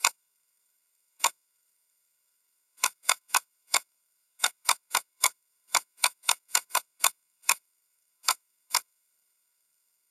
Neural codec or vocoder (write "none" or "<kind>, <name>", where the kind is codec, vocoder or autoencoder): codec, SNAC